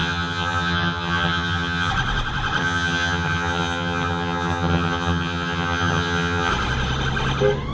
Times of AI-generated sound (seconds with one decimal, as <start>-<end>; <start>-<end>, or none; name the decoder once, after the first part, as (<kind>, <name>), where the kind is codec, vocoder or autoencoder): 0.0-1.9 (vocoder, HiFi-GAN); 2.6-6.5